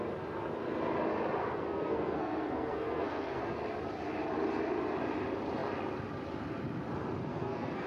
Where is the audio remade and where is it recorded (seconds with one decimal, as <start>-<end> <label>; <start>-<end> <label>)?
0.0-1.4 recorded; 1.4-3.4 remade; 3.4-7.3 recorded; 7.3-7.9 remade